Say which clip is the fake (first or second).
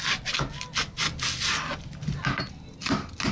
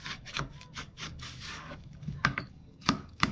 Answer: second